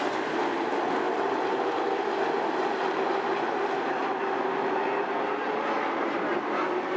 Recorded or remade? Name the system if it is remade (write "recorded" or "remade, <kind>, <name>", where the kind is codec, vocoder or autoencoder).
recorded